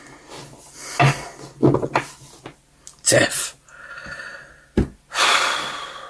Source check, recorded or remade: recorded